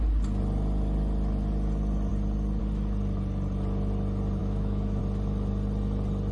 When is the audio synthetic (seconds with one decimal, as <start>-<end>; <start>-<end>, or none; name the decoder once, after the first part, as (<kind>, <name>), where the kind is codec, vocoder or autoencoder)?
4.4-5.0 (autoencoder, DAC-VAE)